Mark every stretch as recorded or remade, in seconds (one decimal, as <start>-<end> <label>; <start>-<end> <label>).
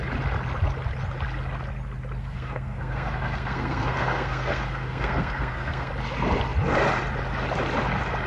0.0-2.2 recorded; 2.2-5.9 remade; 5.9-8.3 recorded